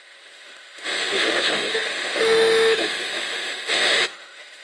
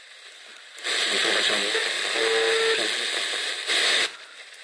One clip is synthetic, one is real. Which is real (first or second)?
second